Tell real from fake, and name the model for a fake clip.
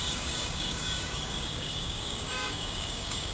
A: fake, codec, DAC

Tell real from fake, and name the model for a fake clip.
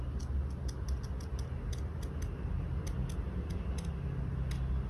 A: real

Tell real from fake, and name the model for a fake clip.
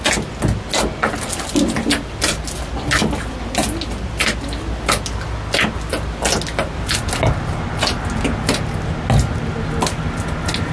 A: real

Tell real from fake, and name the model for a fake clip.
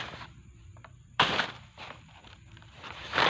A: fake, vocoder, BigVGAN v2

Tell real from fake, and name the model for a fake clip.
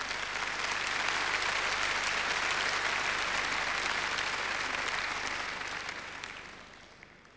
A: real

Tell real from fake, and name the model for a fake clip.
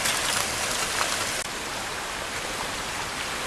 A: real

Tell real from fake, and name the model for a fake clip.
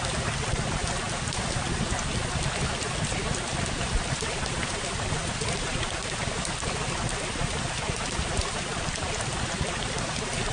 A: real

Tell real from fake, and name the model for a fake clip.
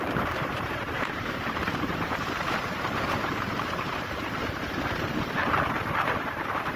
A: fake, vocoder, BigVGAN v2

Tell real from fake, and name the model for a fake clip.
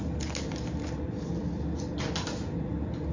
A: real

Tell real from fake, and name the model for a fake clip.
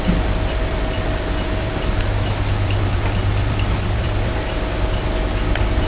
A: fake, vocoder, BigVGAN v2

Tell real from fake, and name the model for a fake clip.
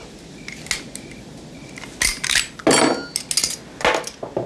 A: real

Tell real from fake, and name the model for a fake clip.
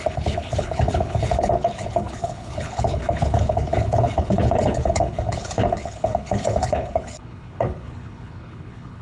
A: fake, codec, HILCodec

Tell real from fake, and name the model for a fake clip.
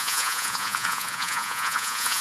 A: fake, vocoder, Vocos